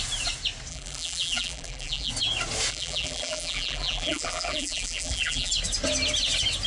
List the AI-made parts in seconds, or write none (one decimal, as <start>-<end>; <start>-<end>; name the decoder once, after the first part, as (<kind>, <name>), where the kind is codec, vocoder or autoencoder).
0.7-2.1 (vocoder, BigVGAN v2); 2.7-5.5